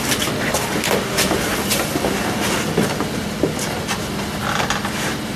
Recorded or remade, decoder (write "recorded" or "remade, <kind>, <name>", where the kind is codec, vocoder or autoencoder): recorded